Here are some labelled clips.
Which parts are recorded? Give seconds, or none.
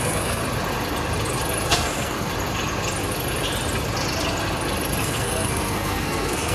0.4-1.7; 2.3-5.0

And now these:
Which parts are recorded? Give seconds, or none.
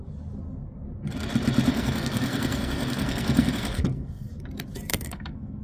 0.0-1.7; 4.3-4.9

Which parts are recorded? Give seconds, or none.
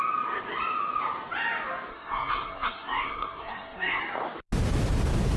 0.0-1.9; 4.0-5.4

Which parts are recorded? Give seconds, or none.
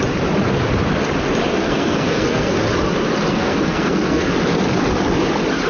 0.0-1.6; 2.6-3.3; 4.3-5.7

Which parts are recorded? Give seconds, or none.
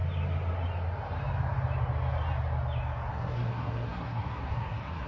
0.0-3.1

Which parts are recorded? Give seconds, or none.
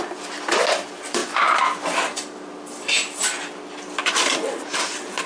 0.0-5.3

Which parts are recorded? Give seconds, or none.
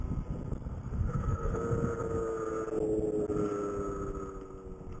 0.0-0.5; 1.6-5.0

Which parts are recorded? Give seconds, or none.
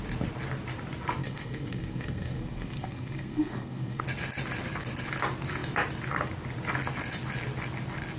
0.0-1.2; 4.0-8.2